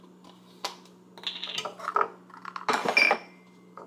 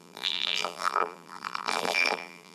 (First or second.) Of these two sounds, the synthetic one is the second